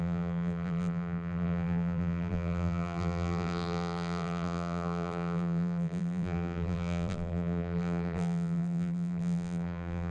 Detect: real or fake fake